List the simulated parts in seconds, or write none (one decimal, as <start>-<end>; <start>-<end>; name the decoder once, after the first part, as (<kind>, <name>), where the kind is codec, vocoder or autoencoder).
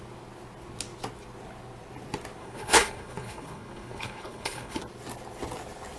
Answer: 2.4-4.8 (codec, HILCodec)